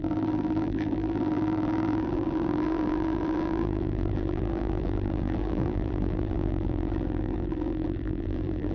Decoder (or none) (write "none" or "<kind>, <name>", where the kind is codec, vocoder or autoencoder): vocoder, BigVGAN v2